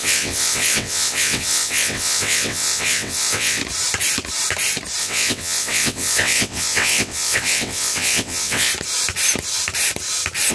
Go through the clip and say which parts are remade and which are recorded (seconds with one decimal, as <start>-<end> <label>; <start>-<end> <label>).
0.0-3.6 remade; 3.6-5.0 recorded; 5.0-8.7 remade; 8.7-10.5 recorded